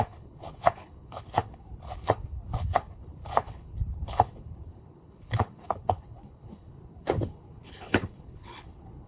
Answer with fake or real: fake